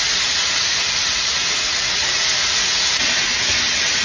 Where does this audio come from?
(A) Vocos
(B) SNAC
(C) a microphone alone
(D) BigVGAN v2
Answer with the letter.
A